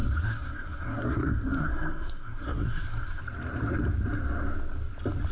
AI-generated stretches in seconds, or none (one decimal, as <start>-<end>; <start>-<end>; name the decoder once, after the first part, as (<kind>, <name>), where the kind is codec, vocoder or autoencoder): 0.0-3.2 (codec, SNAC)